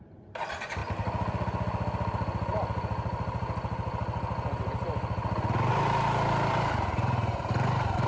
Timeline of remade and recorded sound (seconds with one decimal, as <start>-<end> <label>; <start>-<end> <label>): 0.0-0.8 remade; 0.8-5.7 recorded; 5.7-8.1 remade